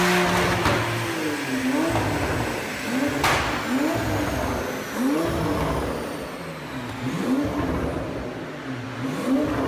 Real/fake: real